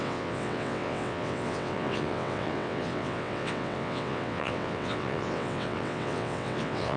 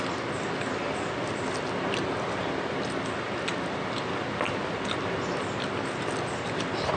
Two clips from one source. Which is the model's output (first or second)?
first